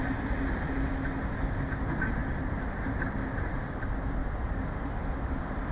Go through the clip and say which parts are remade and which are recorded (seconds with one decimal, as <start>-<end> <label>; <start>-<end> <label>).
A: 0.0-2.2 recorded; 2.2-3.8 remade; 3.8-4.2 recorded; 4.2-5.1 remade; 5.1-5.7 recorded